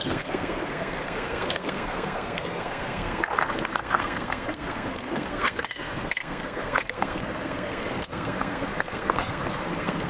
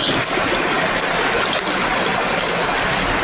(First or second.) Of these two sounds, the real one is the second